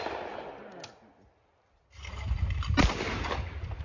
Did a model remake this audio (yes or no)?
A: no